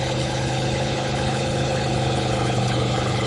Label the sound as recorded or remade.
remade